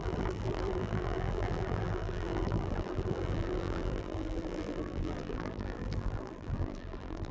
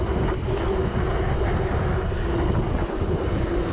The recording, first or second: second